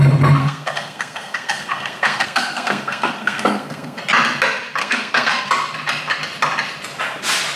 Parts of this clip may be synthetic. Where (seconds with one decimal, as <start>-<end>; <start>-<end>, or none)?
0.4-4.0; 4.8-5.5